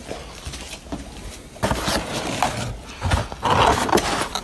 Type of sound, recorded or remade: recorded